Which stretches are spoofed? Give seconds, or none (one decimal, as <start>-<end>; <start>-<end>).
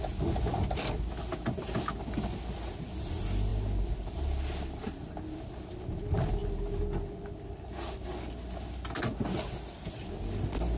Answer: none